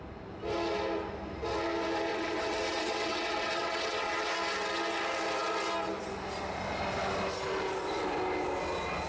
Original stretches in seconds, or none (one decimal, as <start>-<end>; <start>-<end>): 0.0-2.1; 4.3-9.1